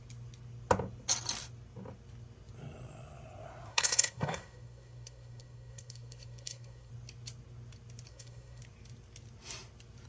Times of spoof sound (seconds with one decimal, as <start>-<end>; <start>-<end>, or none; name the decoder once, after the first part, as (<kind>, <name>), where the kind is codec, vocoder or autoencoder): 3.7-6.9 (codec, SNAC); 8.1-8.6